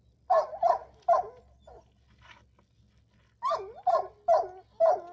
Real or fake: real